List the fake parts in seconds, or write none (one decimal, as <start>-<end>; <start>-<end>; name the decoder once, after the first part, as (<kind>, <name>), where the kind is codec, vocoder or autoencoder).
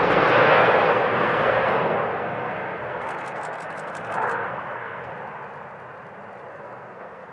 0.0-5.1 (codec, SNAC); 6.5-7.3